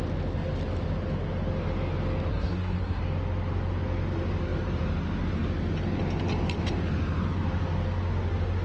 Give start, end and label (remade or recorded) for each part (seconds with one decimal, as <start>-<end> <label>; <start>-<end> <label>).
0.0-2.3 recorded; 2.3-3.0 remade; 3.0-8.6 recorded